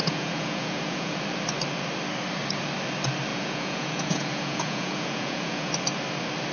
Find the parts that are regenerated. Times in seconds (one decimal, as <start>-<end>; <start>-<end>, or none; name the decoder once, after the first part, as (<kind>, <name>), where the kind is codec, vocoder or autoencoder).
0.0-1.2 (vocoder, Vocos); 3.3-5.7